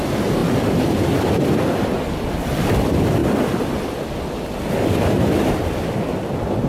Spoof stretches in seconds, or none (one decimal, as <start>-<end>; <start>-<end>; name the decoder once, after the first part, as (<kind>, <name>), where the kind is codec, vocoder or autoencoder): none